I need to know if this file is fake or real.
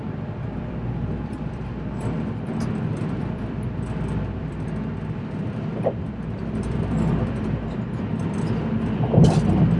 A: fake